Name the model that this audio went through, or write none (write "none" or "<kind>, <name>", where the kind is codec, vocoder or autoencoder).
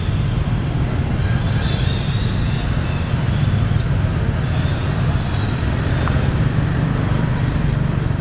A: none